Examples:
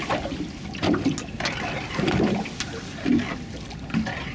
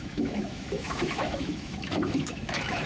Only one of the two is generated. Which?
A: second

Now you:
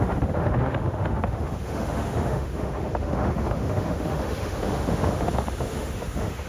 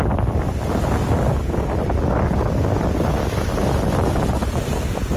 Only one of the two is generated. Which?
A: first